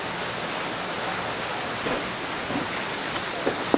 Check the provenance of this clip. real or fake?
real